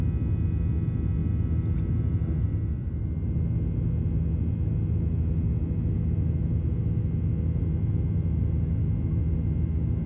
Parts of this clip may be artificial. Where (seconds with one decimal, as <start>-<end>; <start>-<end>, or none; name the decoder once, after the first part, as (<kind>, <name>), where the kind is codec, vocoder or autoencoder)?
none